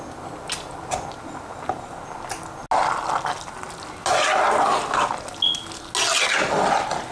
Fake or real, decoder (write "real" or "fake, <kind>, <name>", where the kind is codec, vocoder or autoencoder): real